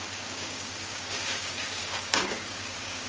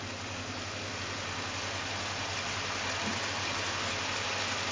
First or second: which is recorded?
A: second